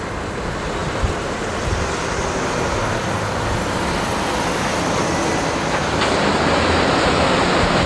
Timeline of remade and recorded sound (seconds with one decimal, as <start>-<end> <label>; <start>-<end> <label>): 0.0-7.9 recorded